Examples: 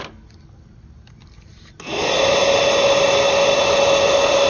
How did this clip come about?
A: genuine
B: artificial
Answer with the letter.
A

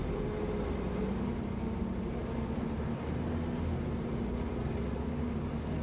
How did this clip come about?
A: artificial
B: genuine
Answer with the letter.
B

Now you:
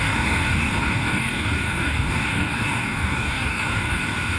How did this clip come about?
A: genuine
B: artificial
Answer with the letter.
B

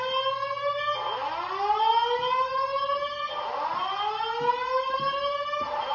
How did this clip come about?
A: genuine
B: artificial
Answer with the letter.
A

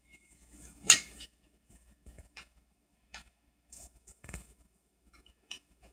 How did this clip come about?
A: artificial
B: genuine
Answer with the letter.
A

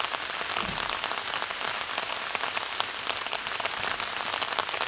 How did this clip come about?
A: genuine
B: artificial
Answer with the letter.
B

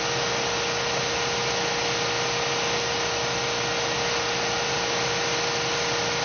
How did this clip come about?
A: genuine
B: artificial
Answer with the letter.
A